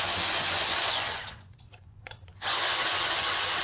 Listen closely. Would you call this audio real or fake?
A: fake